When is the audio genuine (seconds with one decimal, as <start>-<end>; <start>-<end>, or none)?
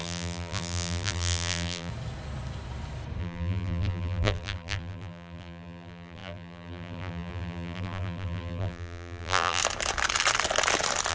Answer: 1.9-3.2; 9.6-11.1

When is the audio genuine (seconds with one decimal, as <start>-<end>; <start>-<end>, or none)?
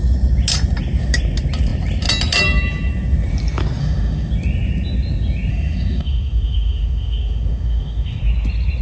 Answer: 0.0-3.8; 4.3-5.5; 8.2-8.8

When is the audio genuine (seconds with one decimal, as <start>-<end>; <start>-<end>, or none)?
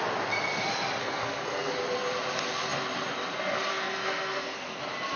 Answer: 0.0-1.0; 1.7-3.7; 4.8-5.2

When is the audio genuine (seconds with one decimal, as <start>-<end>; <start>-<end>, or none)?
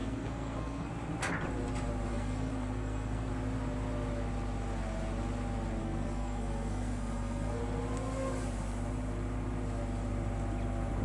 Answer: 0.9-2.1; 3.3-5.8; 7.6-11.0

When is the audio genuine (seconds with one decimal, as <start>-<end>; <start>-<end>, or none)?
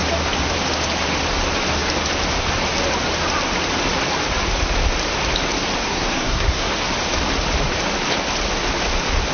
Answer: 0.0-5.8; 6.7-9.3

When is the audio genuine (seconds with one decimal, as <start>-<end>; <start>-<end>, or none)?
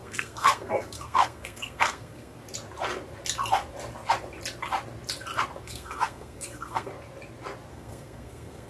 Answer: 2.4-5.6; 6.9-7.7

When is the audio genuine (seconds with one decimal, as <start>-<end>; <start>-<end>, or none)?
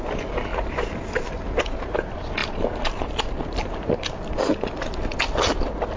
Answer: 0.0-6.0